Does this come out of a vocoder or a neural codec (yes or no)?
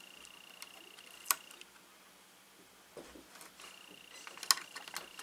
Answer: no